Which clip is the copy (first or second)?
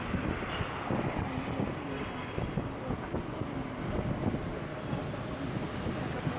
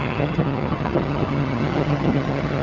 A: second